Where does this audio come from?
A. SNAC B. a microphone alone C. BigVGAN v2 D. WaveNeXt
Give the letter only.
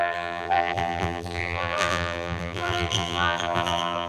C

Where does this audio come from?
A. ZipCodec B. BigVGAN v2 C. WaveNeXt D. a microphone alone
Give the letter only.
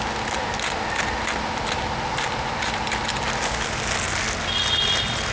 D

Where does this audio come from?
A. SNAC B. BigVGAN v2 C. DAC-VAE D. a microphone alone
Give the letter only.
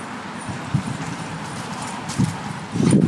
B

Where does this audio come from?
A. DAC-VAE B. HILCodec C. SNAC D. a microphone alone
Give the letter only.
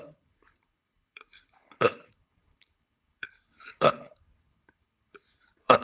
B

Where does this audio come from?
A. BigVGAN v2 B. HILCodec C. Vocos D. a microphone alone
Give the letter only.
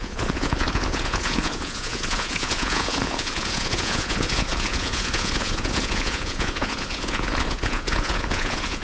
C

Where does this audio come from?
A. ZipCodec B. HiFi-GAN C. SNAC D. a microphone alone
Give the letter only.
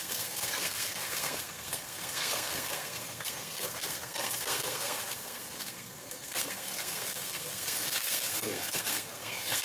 C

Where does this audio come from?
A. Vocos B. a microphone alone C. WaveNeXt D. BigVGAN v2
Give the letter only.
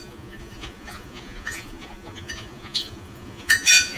A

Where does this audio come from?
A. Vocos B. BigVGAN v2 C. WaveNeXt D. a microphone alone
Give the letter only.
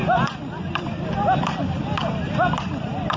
D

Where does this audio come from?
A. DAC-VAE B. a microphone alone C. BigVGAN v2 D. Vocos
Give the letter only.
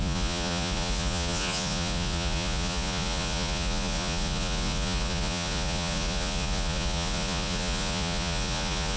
D